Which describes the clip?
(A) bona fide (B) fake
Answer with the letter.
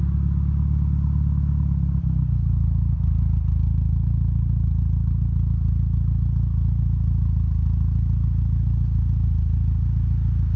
A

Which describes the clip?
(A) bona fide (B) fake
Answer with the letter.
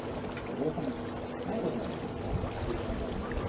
A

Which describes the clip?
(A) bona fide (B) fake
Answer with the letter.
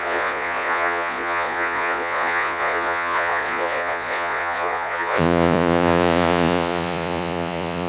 B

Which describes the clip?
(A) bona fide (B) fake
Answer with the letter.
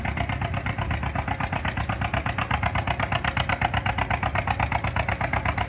A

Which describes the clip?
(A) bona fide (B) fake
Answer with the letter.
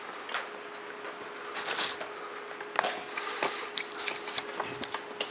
A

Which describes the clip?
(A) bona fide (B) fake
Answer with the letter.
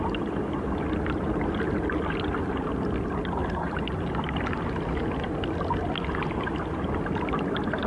A